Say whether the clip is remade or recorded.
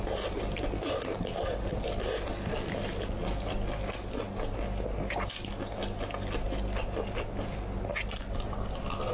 recorded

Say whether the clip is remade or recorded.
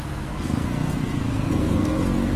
remade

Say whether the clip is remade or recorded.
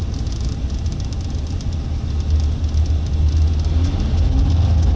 recorded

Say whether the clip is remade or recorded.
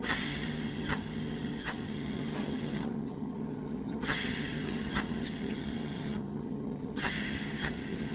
remade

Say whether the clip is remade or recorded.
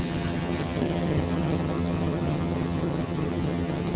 remade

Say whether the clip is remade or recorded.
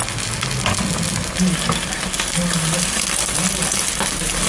recorded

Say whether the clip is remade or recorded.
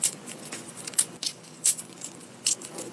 remade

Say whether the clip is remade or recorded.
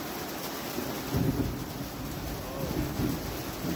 recorded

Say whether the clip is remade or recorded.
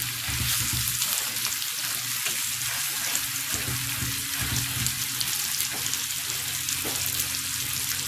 recorded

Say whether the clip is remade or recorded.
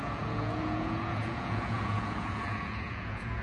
remade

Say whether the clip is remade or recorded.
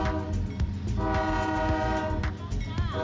recorded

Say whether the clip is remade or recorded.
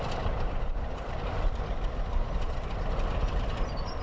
remade